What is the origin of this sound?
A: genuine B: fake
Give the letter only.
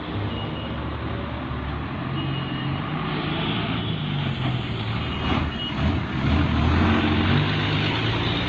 A